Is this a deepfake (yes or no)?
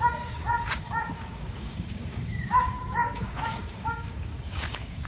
yes